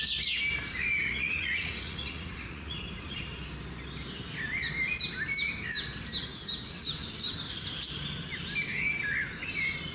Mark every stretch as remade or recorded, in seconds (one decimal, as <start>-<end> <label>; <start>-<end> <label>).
0.0-1.0 recorded; 1.0-3.2 remade; 3.2-9.9 recorded